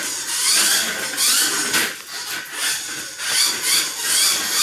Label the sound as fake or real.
real